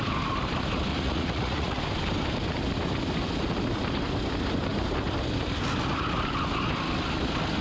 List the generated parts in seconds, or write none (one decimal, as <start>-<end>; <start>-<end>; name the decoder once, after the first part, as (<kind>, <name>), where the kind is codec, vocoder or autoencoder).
0.9-1.8 (vocoder, Vocos)